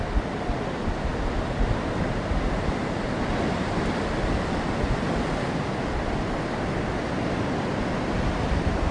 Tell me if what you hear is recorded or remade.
recorded